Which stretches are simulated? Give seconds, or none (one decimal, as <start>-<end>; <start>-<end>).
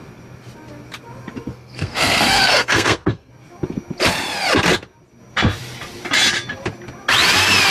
1.5-3.3